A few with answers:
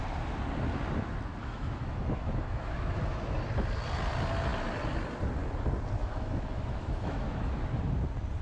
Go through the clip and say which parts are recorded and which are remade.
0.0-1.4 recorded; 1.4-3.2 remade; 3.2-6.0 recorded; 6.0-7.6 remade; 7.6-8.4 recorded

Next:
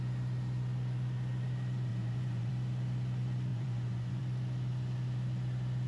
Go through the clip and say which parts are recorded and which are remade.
0.0-1.9 recorded; 1.9-2.5 remade; 2.5-3.5 recorded; 3.5-4.2 remade; 4.2-5.9 recorded

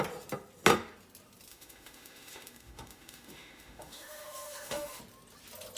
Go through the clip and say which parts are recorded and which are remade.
0.0-1.5 recorded; 1.5-5.0 remade; 5.0-5.8 recorded

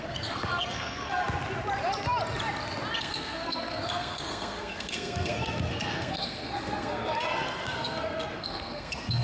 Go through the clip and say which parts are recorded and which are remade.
0.0-1.2 remade; 1.2-3.0 recorded; 3.0-9.2 remade